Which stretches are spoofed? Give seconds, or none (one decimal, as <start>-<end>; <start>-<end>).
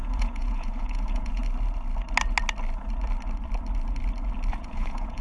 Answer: 0.0-1.4; 4.5-5.2